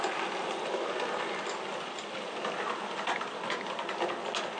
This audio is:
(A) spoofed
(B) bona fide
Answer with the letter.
B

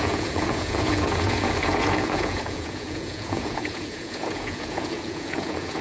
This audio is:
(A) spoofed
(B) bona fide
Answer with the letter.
A